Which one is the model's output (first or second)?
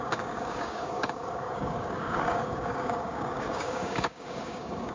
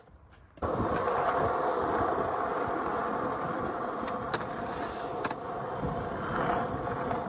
first